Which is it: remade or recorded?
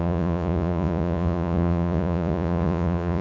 remade